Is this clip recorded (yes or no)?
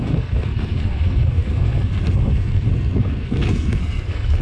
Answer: no